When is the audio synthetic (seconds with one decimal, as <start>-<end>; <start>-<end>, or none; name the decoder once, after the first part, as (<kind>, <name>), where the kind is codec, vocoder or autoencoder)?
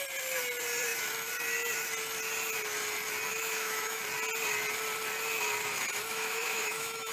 3.3-4.0 (autoencoder, DAC-VAE); 6.1-7.1